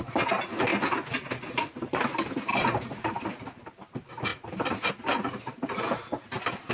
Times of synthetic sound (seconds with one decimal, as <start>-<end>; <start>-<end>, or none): 0.0-0.7; 1.5-6.7